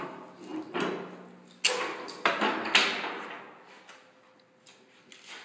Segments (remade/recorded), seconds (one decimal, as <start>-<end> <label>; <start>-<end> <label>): 0.0-5.4 recorded